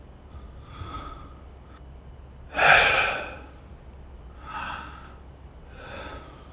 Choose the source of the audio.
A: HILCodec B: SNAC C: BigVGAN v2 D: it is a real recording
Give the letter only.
D